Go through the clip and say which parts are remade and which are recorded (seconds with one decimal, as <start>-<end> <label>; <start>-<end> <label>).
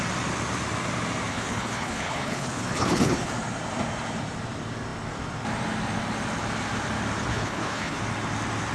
0.0-1.3 recorded; 1.3-3.3 remade; 3.3-7.3 recorded; 7.3-8.0 remade; 8.0-8.7 recorded